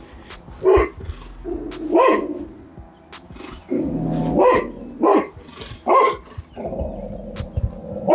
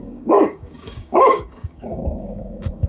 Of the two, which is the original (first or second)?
first